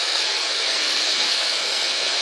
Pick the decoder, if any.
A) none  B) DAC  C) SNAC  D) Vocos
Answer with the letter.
C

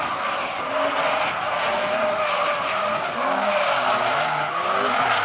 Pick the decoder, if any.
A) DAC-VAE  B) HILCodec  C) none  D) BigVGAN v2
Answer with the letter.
C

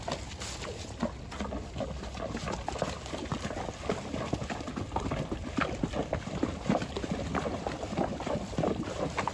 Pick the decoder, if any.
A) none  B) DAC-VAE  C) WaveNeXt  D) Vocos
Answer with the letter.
A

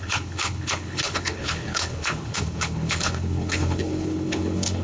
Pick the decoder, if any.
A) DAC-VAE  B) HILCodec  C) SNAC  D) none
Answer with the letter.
B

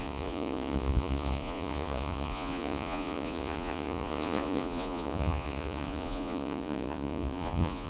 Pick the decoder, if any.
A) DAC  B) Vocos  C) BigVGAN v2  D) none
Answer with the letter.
B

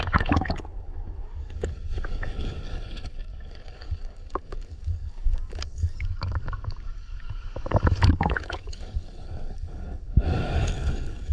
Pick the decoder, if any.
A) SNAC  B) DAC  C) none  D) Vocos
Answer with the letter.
B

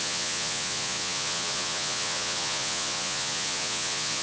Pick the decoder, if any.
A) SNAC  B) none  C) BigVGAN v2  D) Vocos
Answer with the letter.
D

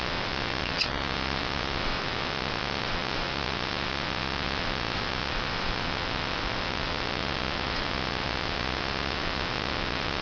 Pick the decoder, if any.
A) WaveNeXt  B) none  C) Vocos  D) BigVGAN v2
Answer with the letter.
A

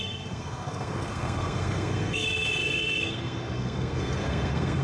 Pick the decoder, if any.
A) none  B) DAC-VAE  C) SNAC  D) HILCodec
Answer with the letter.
C